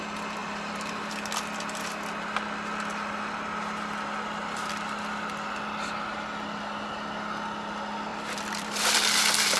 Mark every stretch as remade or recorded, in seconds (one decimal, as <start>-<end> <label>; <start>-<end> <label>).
0.0-0.4 recorded; 0.4-1.1 remade; 1.1-8.1 recorded; 8.1-9.1 remade; 9.1-9.6 recorded